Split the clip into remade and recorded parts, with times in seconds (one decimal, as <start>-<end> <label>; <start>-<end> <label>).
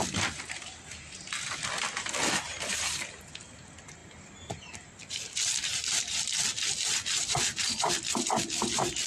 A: 0.0-9.1 recorded